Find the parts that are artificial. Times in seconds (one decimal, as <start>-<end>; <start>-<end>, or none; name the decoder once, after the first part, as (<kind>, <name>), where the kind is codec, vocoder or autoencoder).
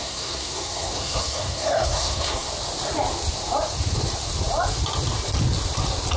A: 0.0-2.5 (codec, SNAC)